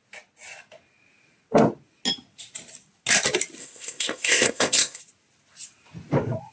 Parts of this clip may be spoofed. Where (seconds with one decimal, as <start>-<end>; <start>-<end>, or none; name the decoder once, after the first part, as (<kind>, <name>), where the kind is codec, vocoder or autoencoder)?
3.6-5.0 (codec, ZipCodec)